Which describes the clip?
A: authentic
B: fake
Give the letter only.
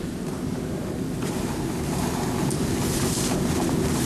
A